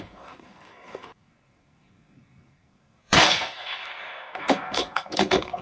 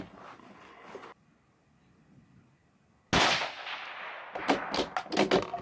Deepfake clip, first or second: first